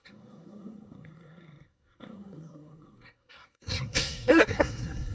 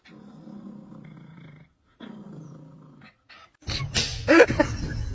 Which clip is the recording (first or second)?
second